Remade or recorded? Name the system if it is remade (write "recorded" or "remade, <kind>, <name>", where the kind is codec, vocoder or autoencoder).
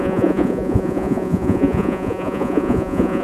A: remade, vocoder, Vocos